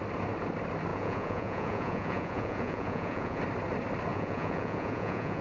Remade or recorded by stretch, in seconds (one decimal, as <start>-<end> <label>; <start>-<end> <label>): 0.0-0.9 recorded; 0.9-3.4 remade; 3.4-4.1 recorded; 4.1-5.4 remade